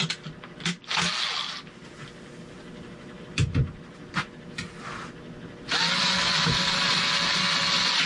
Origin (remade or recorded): recorded